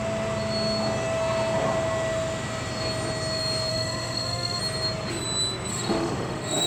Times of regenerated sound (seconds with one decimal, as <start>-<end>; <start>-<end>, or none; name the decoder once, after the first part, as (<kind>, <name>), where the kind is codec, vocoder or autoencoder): 3.7-4.6 (autoencoder, DAC-VAE); 5.7-6.7